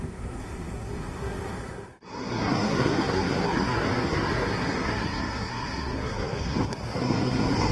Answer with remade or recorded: remade